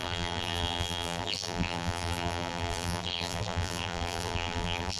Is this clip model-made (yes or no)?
yes